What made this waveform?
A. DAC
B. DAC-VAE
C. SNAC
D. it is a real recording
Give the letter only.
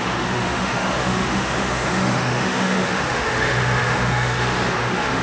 B